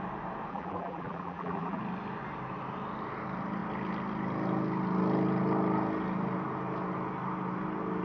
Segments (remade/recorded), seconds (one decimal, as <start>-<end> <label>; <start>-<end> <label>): 0.0-0.5 recorded; 0.5-1.8 remade; 1.8-8.0 recorded